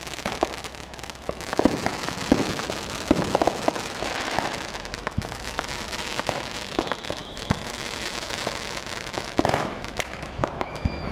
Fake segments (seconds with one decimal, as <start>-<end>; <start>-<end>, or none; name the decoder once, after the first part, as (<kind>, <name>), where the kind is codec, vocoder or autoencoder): 0.0-11.1 (autoencoder, DAC-VAE)